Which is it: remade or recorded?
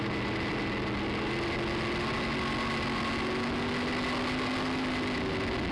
recorded